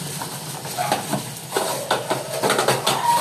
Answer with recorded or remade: recorded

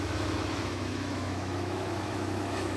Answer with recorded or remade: remade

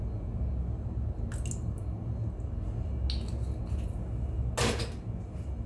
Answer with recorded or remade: recorded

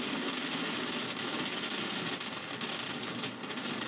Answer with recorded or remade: recorded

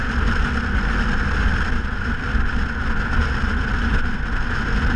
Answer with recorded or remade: recorded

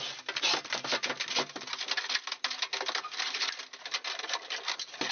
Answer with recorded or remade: recorded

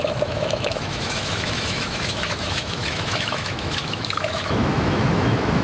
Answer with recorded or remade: remade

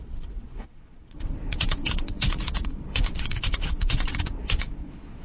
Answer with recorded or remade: remade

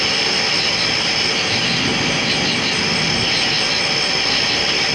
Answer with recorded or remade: recorded